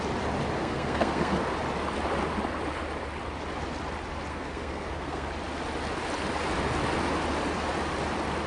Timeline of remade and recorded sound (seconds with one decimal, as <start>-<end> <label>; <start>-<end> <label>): 0.0-0.6 recorded; 0.6-1.4 remade; 1.4-4.3 recorded; 4.3-5.3 remade; 5.3-8.5 recorded